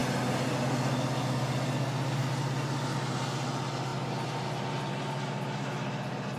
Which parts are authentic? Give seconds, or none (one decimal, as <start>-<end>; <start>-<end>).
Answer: 0.0-6.4